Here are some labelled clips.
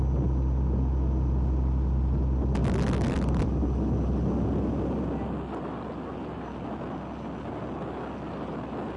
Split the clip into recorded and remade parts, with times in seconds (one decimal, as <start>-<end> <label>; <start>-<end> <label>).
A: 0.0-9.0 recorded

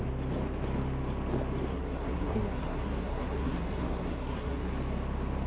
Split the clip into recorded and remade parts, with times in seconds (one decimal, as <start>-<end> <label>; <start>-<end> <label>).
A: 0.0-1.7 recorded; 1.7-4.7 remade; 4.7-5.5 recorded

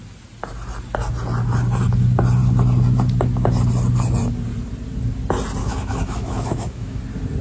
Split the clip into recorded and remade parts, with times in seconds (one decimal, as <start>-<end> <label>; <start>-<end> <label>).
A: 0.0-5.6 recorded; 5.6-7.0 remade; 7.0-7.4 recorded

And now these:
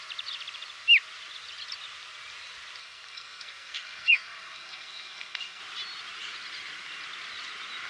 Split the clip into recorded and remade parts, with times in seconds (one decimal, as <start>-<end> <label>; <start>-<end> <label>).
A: 0.0-2.8 recorded; 2.8-5.6 remade; 5.6-7.9 recorded

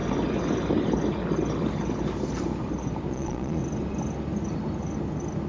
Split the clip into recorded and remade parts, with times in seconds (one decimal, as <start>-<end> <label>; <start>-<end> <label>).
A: 0.0-3.1 recorded; 3.1-3.6 remade; 3.6-5.5 recorded

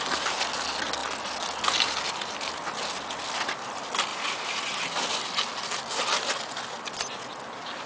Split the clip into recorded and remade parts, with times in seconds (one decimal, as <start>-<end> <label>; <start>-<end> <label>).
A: 0.0-4.1 recorded; 4.1-4.7 remade; 4.7-7.9 recorded

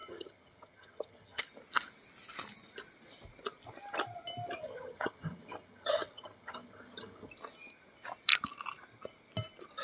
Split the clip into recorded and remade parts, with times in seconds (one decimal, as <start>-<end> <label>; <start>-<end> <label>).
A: 0.0-1.4 remade; 1.4-4.6 recorded; 4.6-7.3 remade; 7.3-9.8 recorded

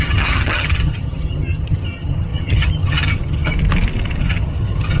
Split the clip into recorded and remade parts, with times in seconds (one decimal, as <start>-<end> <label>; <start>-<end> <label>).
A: 0.0-3.5 remade; 3.5-4.2 recorded; 4.2-5.0 remade